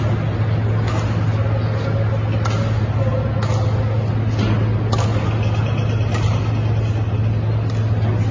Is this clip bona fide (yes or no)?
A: yes